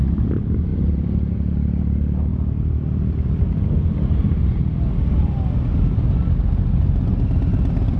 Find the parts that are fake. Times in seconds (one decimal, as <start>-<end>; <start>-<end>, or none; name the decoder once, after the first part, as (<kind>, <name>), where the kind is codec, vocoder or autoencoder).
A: none